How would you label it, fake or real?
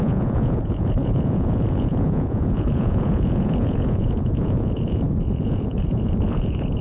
fake